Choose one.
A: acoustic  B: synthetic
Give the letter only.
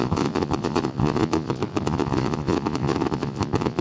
B